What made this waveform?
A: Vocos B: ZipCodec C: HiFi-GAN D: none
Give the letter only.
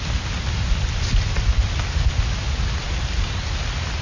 D